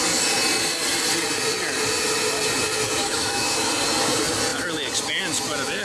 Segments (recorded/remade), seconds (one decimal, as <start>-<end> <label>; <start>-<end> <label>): 0.0-3.0 recorded; 3.0-3.7 remade; 3.7-5.8 recorded